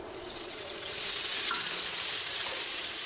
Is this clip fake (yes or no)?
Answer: yes